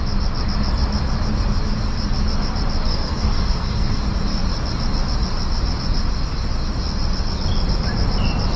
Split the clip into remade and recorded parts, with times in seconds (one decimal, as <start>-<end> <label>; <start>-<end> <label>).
0.0-2.9 recorded; 2.9-4.0 remade; 4.0-8.6 recorded